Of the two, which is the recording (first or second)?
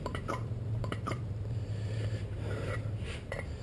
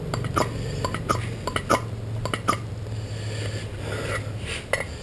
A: second